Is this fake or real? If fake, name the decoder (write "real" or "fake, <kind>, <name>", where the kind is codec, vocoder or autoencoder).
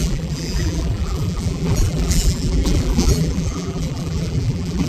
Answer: fake, vocoder, BigVGAN v2